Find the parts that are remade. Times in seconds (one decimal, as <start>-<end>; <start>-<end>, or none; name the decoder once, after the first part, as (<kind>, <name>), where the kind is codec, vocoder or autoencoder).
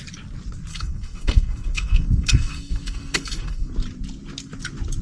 0.7-3.7 (codec, SNAC)